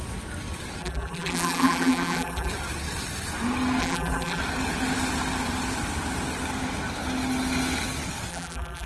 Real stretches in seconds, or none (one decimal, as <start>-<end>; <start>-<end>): 0.0-0.8; 2.5-3.8; 4.4-8.3